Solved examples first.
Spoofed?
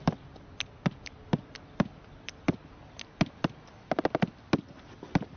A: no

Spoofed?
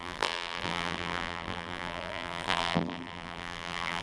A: yes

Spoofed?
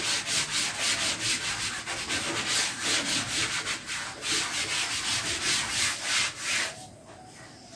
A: no